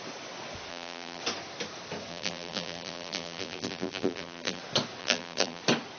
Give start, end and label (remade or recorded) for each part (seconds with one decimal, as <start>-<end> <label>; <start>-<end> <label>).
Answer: 0.0-0.7 recorded; 0.7-1.2 remade; 1.2-2.1 recorded; 2.1-4.6 remade; 4.6-5.0 recorded; 5.0-5.6 remade; 5.6-6.0 recorded